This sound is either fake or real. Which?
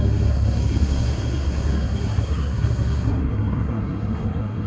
fake